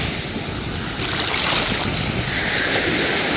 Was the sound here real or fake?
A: real